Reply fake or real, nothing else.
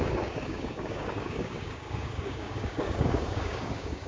fake